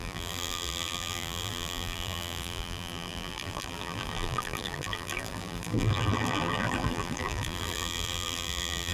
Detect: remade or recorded remade